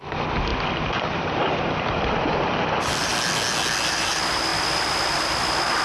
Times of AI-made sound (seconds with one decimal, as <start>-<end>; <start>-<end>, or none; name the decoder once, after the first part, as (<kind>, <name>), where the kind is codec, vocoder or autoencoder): 0.0-3.1 (vocoder, BigVGAN v2); 3.9-5.8